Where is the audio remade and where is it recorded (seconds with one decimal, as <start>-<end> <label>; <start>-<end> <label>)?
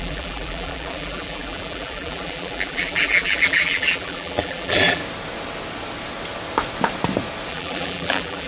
0.0-5.0 remade; 5.0-7.5 recorded; 7.5-8.5 remade